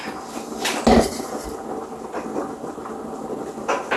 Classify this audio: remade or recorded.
recorded